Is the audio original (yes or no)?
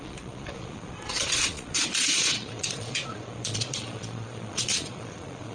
no